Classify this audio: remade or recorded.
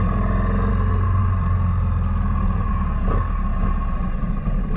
recorded